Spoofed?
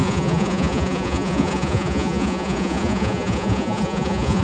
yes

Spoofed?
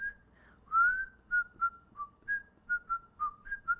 no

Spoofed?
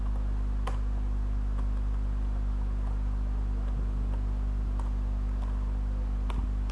no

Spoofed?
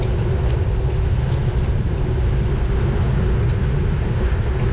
no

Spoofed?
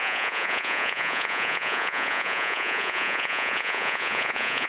yes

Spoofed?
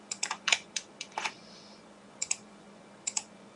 yes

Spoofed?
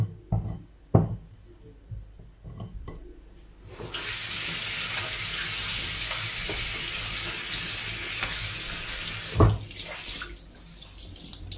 no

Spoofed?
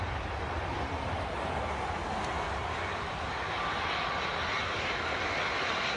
no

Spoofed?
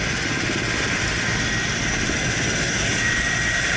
no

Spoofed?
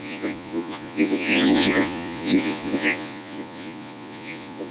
yes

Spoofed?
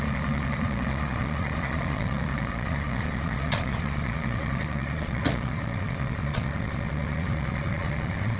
yes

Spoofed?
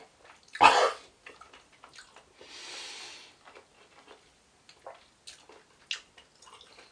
no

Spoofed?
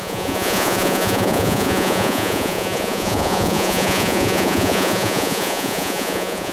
yes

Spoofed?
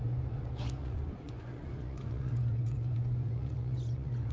yes